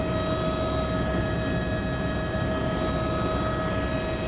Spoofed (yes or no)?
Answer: no